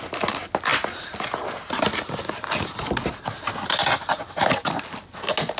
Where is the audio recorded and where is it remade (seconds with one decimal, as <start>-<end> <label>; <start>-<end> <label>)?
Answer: 0.0-5.6 recorded